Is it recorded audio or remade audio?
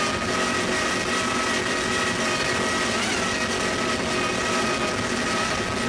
recorded